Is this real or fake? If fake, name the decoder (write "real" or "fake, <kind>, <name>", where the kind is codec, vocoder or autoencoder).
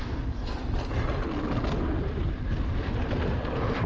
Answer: real